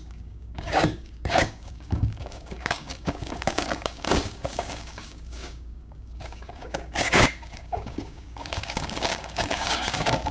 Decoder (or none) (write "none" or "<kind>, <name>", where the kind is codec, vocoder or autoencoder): codec, DAC